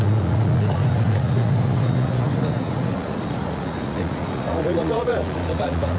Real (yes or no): no